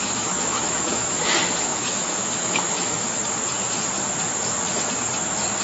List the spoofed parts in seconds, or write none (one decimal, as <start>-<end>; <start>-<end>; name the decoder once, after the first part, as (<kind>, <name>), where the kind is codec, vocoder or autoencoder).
0.0-3.2 (autoencoder, DAC-VAE)